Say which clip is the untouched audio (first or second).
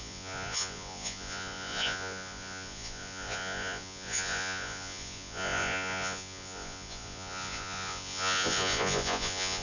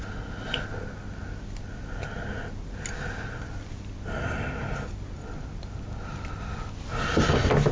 second